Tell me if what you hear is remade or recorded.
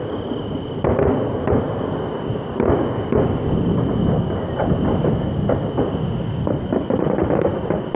recorded